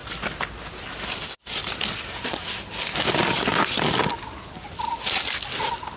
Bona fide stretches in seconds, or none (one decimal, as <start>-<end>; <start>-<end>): 0.0-6.0